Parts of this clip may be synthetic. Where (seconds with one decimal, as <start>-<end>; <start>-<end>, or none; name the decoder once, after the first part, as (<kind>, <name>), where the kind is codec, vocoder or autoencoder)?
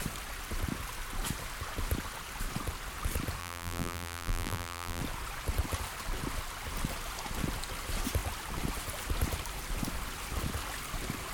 3.4-5.0 (vocoder, BigVGAN v2)